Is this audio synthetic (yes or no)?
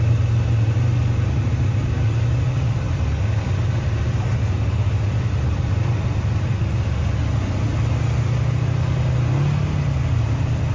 no